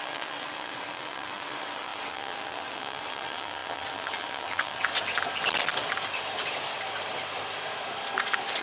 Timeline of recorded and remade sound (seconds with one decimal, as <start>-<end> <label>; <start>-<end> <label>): 0.0-4.9 remade; 4.9-8.6 recorded